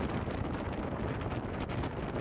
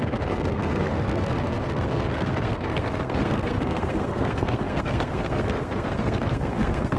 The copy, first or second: second